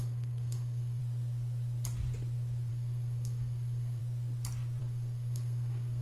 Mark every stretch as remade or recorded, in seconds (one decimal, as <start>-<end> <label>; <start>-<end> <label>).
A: 0.0-1.0 remade; 1.0-2.7 recorded; 2.7-4.0 remade; 4.0-4.8 recorded; 4.8-6.0 remade